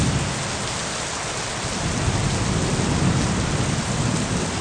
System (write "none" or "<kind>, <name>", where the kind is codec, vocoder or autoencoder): none